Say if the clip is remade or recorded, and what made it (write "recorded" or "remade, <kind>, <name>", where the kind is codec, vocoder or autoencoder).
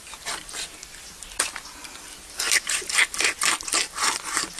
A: recorded